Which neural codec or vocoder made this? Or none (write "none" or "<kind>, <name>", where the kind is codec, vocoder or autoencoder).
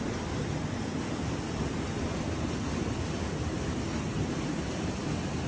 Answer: none